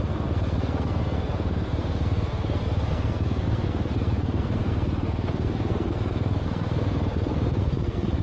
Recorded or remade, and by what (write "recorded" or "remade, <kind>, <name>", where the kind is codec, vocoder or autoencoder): remade, codec, SNAC